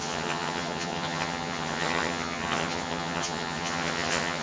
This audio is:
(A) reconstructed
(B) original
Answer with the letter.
A